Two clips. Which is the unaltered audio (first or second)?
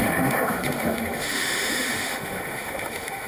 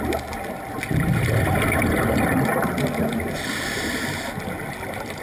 second